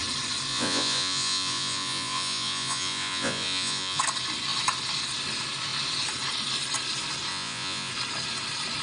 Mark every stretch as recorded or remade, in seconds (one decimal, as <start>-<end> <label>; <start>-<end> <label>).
0.0-0.5 recorded; 0.5-4.0 remade; 4.0-7.3 recorded; 7.3-7.9 remade; 7.9-8.8 recorded